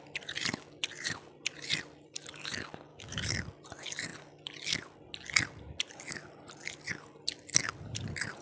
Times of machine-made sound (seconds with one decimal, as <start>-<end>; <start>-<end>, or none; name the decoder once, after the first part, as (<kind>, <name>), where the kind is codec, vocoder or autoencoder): 2.9-3.4 (codec, DAC)